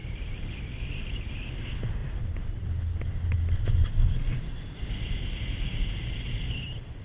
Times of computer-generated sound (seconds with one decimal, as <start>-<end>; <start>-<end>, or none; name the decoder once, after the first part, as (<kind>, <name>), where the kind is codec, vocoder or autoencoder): 2.0-2.7 (vocoder, BigVGAN v2)